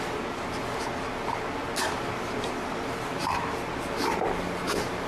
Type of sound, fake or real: real